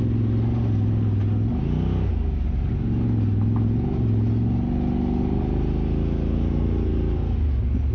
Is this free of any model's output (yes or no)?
yes